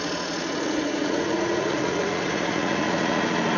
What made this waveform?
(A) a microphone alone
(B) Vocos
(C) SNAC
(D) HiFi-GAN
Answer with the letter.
B